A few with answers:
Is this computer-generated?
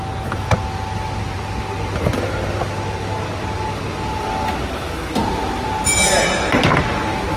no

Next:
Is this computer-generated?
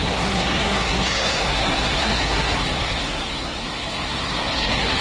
yes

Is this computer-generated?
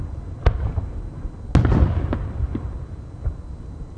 no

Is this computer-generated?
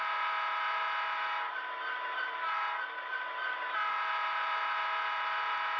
no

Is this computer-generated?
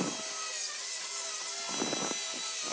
no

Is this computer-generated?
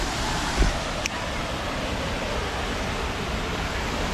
no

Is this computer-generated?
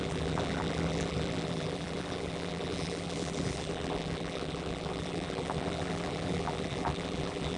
yes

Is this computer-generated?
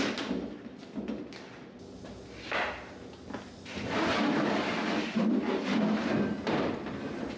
no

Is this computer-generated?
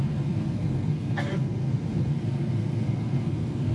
yes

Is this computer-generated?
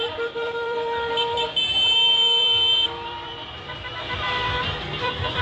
yes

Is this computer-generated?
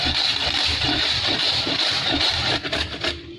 no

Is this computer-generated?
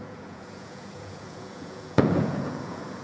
yes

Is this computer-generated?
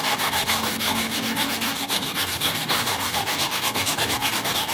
yes